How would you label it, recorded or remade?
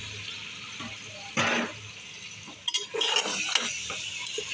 recorded